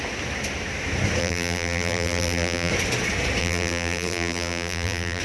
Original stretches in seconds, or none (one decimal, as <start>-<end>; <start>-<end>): 0.0-1.2; 2.7-3.4

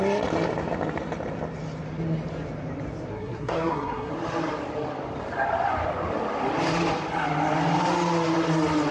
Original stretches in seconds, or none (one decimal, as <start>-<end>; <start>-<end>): 0.0-3.1; 4.1-8.9

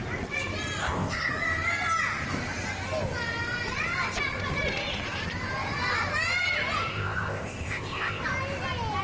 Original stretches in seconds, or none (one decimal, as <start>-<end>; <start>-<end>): 0.0-0.8; 1.3-6.9; 8.2-9.0

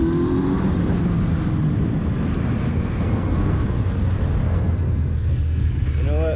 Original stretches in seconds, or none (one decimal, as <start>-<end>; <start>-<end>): 0.0-2.7; 4.0-4.4; 5.9-6.4

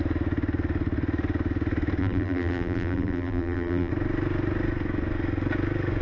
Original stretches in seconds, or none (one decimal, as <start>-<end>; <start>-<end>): 0.0-2.0; 3.9-6.0

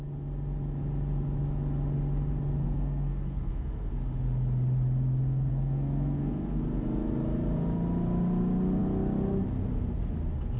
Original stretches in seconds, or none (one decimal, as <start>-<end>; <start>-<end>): 0.0-2.6; 3.9-5.5; 6.6-10.6

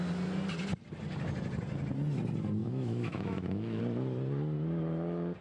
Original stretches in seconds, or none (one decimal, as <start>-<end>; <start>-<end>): 0.0-2.6; 3.8-5.4

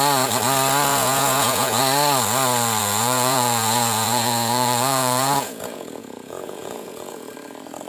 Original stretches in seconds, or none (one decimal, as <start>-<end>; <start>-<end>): 0.0-0.9; 1.8-2.8; 7.3-7.9